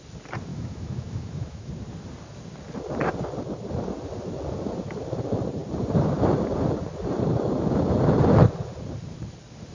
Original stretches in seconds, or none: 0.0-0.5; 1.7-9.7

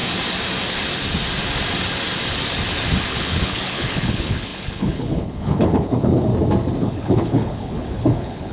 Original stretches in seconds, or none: 0.0-3.1; 6.3-6.8